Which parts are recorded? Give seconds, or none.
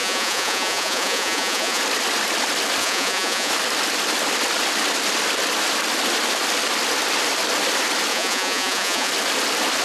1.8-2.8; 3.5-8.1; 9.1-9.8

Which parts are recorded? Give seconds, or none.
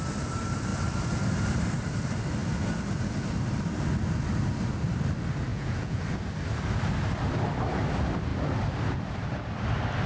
0.0-5.5; 6.0-10.1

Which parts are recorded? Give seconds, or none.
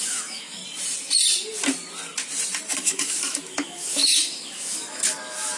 0.6-2.7